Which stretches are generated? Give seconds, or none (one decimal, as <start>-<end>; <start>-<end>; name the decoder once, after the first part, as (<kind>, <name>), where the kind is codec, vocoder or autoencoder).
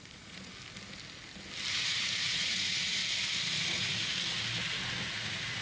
0.0-0.5 (vocoder, Vocos); 1.7-3.0; 3.5-4.1; 5.1-5.6